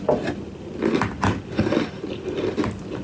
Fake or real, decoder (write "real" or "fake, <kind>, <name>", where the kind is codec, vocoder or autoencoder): real